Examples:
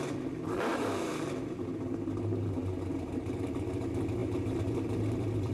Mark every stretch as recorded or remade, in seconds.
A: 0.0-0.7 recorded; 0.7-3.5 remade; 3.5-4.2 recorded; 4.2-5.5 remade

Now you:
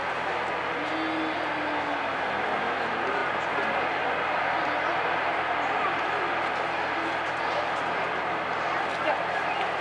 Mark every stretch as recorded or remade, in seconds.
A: 0.0-9.8 recorded

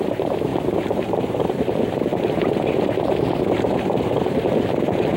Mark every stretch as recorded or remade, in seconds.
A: 0.0-2.1 remade; 2.1-3.4 recorded; 3.4-5.2 remade

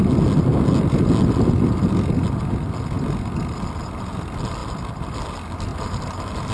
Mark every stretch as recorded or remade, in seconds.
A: 0.0-4.6 recorded; 4.6-5.2 remade; 5.2-5.7 recorded; 5.7-6.5 remade

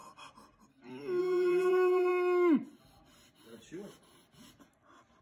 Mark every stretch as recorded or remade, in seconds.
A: 0.0-1.2 recorded; 1.2-2.1 remade; 2.1-5.2 recorded

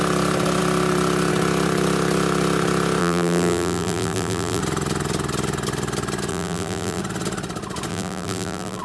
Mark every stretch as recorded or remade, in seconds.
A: 0.0-3.0 recorded; 3.0-4.6 remade; 4.6-6.3 recorded; 6.3-7.0 remade; 7.0-7.9 recorded; 7.9-8.8 remade

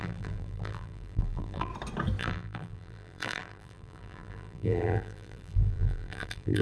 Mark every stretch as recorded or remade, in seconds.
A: 0.0-1.7 remade; 1.7-2.2 recorded; 2.2-6.6 remade

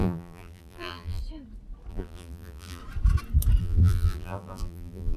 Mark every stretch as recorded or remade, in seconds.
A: 0.0-1.2 remade; 1.2-1.9 recorded; 1.9-2.8 remade; 2.8-3.6 recorded; 3.6-5.2 remade